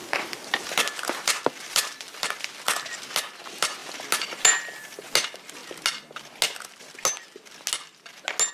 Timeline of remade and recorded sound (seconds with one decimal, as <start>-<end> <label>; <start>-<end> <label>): 0.0-2.6 remade; 2.6-8.5 recorded